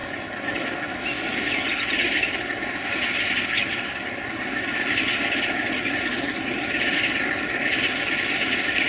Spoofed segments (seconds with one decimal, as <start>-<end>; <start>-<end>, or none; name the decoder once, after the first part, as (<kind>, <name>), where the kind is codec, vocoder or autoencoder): none